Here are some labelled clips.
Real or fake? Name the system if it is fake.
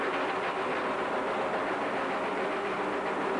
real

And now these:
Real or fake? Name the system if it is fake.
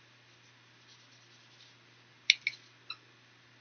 real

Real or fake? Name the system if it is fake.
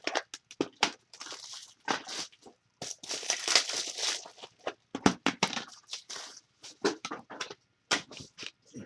real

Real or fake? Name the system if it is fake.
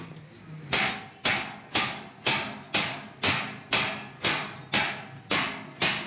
real